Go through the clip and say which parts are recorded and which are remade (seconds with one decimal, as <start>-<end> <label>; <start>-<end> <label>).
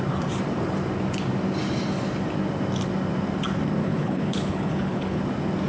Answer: 0.0-3.8 recorded; 3.8-5.2 remade; 5.2-5.7 recorded